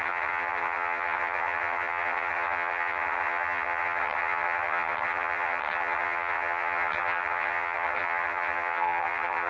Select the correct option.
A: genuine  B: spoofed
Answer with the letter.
B